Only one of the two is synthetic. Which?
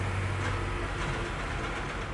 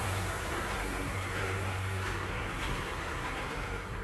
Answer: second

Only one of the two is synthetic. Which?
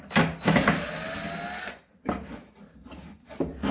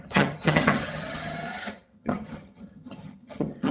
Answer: second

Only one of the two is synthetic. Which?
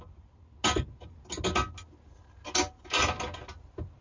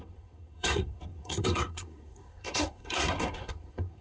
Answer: second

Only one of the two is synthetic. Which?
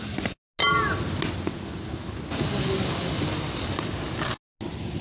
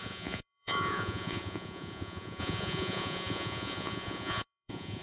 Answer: second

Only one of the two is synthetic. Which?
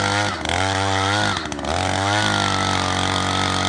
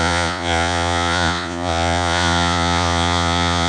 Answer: second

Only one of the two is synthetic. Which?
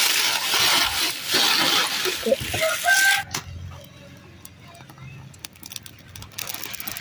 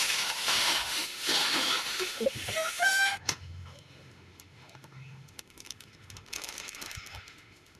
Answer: second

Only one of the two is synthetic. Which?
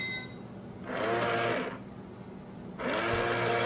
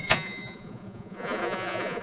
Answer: second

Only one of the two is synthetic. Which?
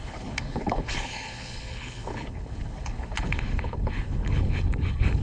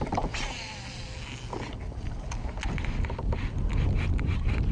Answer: first